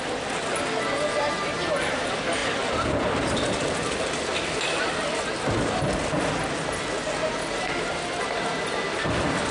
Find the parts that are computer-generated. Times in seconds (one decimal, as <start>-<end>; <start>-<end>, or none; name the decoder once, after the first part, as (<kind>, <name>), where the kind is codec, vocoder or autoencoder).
none